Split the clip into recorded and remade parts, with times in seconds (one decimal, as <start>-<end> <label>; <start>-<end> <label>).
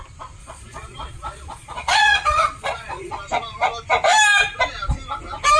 0.0-0.4 recorded; 0.4-3.1 remade; 3.1-5.6 recorded